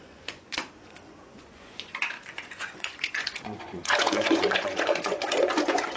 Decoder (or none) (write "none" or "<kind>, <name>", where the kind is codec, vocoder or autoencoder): vocoder, Vocos